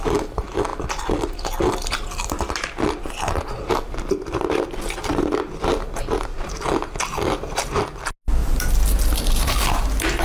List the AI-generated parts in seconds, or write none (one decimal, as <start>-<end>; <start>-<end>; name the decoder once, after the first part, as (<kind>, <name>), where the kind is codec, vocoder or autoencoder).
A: 8.4-10.2 (vocoder, BigVGAN v2)